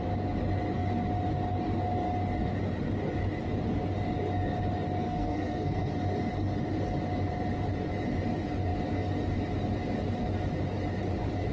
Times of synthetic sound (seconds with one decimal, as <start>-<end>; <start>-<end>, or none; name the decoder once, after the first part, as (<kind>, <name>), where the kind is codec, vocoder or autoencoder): 5.0-5.9 (codec, SNAC)